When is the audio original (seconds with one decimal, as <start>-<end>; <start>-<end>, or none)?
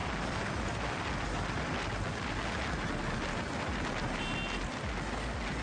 0.0-5.6